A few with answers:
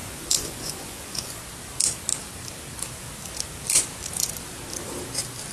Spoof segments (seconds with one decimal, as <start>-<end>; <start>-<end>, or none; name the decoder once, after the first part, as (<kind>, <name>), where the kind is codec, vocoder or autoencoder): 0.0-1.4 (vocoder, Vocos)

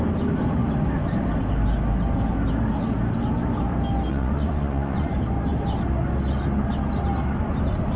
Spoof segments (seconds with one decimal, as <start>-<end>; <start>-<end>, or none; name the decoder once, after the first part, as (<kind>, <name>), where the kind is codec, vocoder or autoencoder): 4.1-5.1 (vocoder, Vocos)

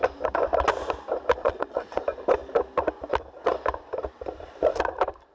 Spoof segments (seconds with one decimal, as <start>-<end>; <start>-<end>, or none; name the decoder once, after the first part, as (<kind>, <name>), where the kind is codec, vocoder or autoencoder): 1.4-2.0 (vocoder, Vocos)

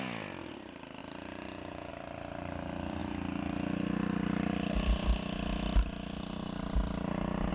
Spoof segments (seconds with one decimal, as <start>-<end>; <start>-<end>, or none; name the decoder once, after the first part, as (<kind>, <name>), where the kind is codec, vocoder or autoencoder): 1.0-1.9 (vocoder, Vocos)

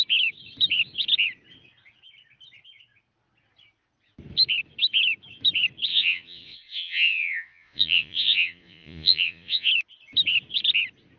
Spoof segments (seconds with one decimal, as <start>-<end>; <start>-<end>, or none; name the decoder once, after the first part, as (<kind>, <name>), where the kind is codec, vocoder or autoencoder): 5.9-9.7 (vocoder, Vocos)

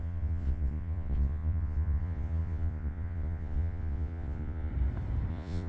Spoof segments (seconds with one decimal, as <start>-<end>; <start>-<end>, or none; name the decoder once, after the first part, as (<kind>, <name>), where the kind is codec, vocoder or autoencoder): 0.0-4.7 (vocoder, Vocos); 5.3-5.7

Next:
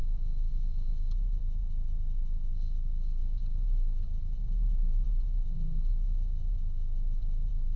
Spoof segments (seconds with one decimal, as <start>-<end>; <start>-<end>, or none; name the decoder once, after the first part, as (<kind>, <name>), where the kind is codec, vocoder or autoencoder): 0.0-2.5 (vocoder, Vocos); 3.2-7.8

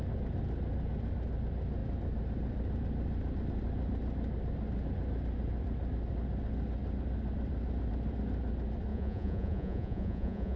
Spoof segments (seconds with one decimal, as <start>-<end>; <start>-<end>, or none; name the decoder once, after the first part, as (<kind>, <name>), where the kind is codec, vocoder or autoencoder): 8.9-10.6 (vocoder, Vocos)